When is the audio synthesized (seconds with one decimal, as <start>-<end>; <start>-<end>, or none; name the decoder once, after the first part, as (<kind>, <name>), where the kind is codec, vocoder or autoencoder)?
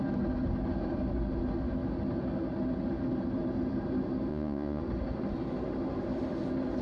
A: 4.3-4.8 (vocoder, Vocos)